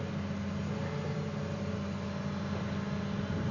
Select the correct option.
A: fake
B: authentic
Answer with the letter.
B